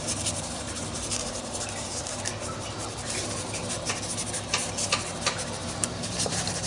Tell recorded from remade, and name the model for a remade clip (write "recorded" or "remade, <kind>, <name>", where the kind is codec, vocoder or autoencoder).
remade, vocoder, BigVGAN v2